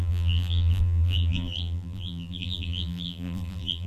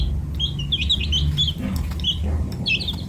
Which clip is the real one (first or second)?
second